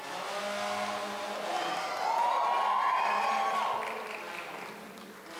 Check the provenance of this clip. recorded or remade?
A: recorded